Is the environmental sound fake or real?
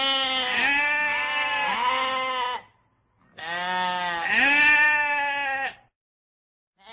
real